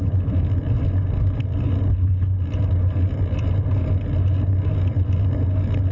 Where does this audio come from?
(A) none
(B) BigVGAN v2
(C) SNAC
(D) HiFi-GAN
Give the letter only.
A